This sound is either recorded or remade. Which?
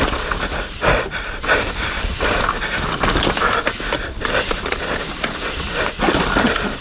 remade